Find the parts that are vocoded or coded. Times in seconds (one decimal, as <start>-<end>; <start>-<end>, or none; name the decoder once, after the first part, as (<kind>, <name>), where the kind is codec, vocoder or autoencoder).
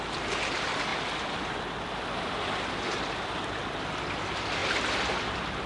none